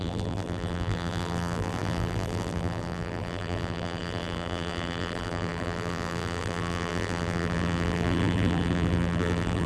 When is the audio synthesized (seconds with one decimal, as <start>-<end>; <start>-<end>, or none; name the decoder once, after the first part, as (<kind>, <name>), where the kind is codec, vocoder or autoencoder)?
0.0-9.7 (vocoder, BigVGAN v2)